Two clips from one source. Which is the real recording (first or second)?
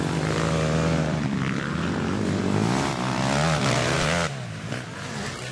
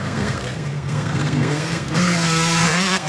first